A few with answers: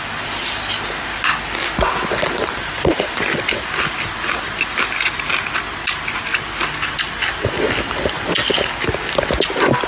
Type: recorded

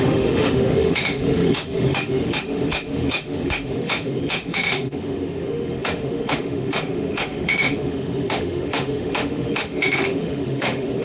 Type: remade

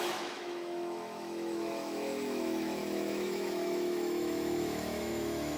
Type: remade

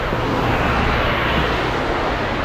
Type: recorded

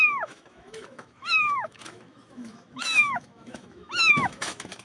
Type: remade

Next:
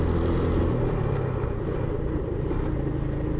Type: recorded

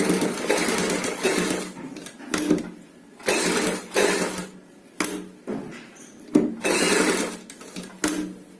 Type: recorded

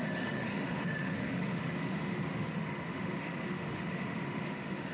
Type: remade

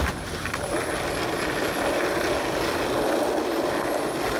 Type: recorded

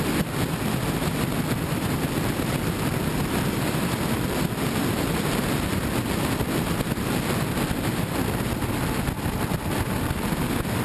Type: recorded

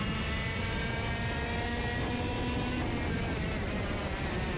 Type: recorded